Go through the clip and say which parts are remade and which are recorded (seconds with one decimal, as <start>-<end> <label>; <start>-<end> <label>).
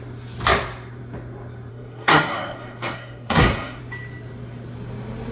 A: 0.0-1.7 recorded; 1.7-3.8 remade; 3.8-5.3 recorded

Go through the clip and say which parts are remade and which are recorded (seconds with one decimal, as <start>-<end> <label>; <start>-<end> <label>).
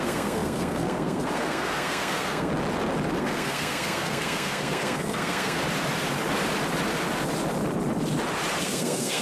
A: 0.0-2.5 remade; 2.5-3.2 recorded; 3.2-5.6 remade; 5.6-8.6 recorded; 8.6-9.2 remade